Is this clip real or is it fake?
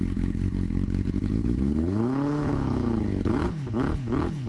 fake